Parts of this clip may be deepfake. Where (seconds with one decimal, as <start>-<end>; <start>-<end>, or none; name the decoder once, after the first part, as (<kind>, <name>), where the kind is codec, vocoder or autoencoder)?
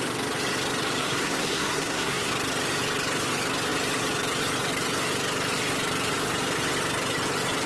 1.0-2.3 (codec, SNAC)